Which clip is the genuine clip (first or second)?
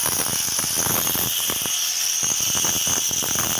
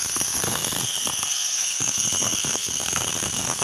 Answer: first